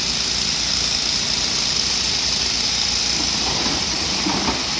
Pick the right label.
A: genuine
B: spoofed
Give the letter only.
A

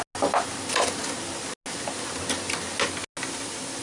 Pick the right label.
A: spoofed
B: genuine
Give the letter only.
B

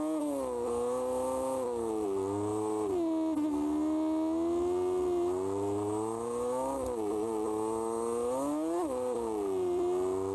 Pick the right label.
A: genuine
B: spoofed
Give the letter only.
A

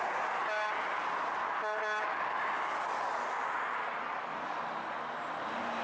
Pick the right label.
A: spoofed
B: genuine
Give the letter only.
B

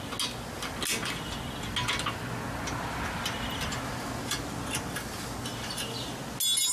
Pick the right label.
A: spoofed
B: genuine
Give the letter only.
B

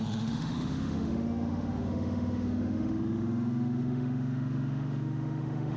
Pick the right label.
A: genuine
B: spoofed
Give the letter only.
B